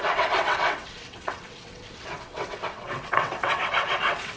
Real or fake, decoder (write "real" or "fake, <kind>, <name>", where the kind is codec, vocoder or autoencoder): fake, vocoder, WaveNeXt